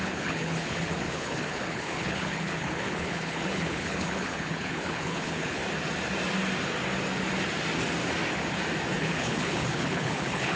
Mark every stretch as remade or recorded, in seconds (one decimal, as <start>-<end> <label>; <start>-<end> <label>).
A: 0.0-5.6 remade; 5.6-9.0 recorded; 9.0-10.6 remade